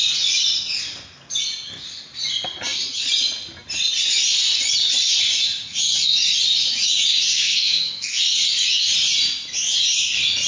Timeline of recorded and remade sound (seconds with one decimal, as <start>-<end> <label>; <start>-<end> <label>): 0.0-7.3 recorded; 7.3-8.2 remade; 8.2-10.5 recorded